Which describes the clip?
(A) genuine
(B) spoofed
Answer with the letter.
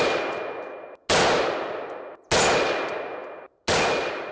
A